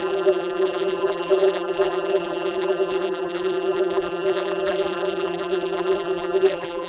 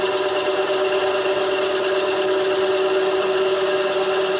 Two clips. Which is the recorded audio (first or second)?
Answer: second